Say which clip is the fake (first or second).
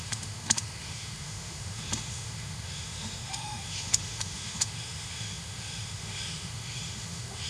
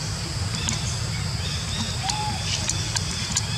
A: first